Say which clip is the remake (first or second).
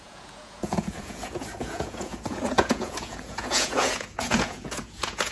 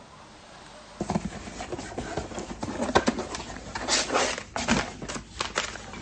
first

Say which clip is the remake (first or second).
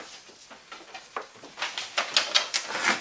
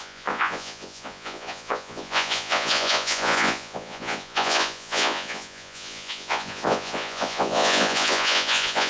second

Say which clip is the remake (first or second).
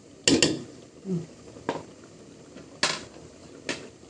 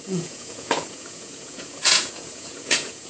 second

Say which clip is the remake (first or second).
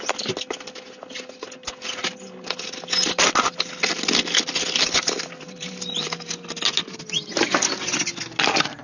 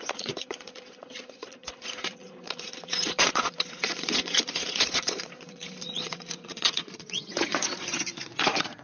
second